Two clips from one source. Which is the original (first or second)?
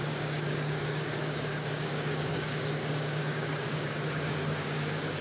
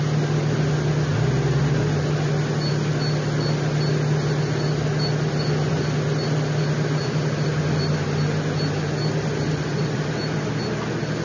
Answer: second